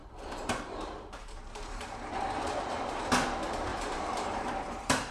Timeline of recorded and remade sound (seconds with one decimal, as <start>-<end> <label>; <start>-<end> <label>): 0.0-3.1 remade; 3.1-3.7 recorded; 3.7-5.1 remade